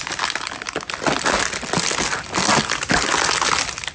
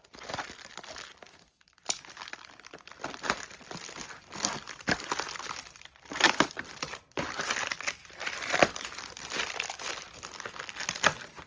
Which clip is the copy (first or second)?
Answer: second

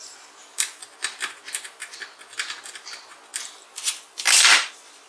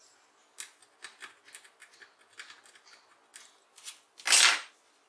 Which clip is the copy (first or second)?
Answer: first